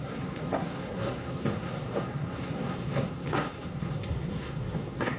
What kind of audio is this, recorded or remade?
remade